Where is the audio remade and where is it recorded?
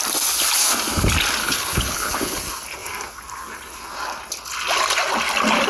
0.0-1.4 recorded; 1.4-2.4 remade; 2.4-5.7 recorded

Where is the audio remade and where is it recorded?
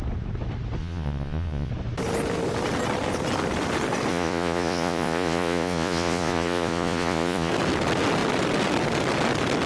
0.0-0.8 recorded; 0.8-1.7 remade; 1.7-4.1 recorded; 4.1-7.5 remade; 7.5-9.7 recorded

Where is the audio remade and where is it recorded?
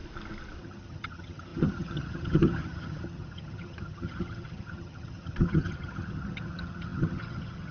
0.0-0.6 recorded; 0.6-7.7 remade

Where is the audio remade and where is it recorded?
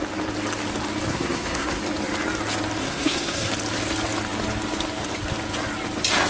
0.0-1.1 recorded; 1.1-1.8 remade; 1.8-2.8 recorded; 2.8-3.5 remade; 3.5-6.3 recorded